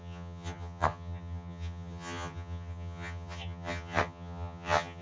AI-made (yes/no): yes